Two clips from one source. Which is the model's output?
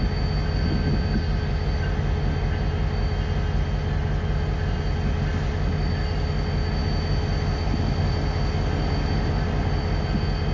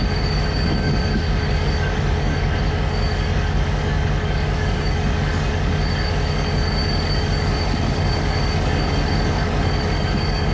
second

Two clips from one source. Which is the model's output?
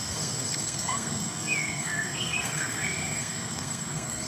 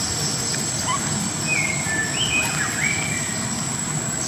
first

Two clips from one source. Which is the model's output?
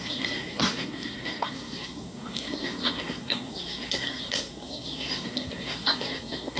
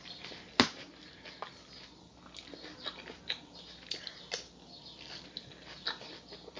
first